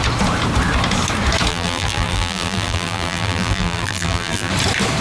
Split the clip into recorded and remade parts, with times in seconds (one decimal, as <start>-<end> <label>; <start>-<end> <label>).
0.0-1.5 recorded; 1.5-4.5 remade; 4.5-5.0 recorded